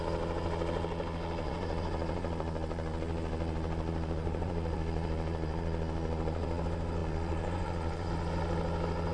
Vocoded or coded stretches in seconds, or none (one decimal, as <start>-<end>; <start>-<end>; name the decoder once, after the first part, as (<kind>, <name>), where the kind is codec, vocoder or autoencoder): 1.4-6.6 (vocoder, Vocos); 7.0-8.1